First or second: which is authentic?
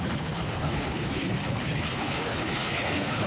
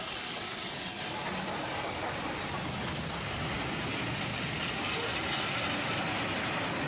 second